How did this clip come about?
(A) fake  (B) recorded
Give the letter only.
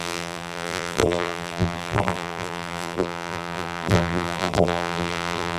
A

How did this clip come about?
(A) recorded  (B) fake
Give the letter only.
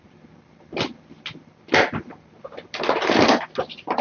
A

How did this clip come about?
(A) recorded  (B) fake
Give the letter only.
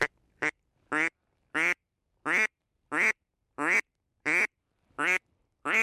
A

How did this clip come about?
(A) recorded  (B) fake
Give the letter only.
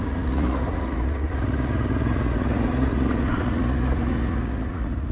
B